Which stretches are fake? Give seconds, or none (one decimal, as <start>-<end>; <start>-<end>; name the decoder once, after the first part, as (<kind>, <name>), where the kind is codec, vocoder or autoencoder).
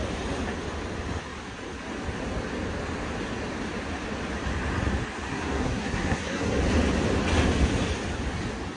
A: 5.3-6.6 (codec, SNAC)